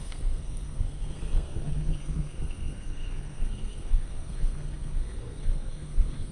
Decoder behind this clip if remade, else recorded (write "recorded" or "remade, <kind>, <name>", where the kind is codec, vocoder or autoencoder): remade, codec, SNAC